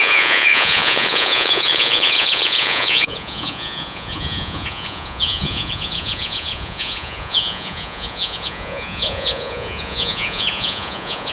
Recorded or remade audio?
remade